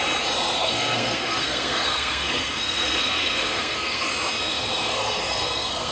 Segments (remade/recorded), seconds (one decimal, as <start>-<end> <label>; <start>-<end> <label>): 0.0-0.6 recorded; 0.6-4.1 remade; 4.1-4.5 recorded; 4.5-5.9 remade